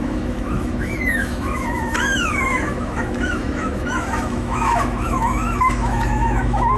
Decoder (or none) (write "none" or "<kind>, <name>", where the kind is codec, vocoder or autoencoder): autoencoder, DAC-VAE